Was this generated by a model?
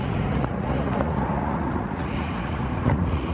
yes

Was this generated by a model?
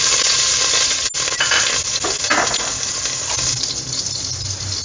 no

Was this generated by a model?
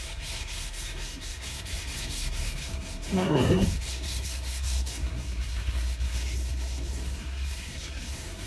yes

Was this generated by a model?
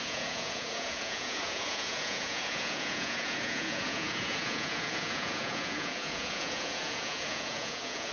yes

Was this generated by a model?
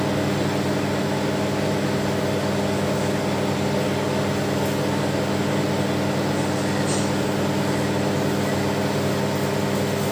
no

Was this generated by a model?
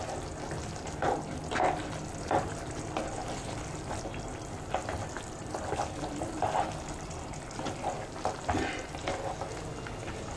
no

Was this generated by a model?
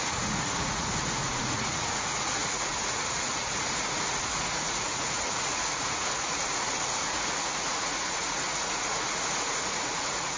yes